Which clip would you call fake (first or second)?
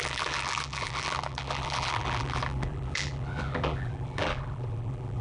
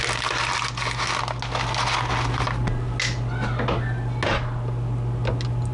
first